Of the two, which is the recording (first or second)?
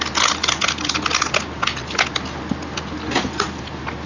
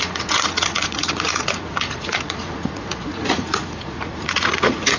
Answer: first